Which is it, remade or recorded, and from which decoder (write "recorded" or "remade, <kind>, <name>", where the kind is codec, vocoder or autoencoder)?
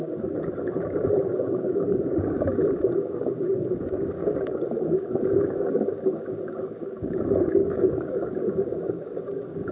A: remade, codec, DAC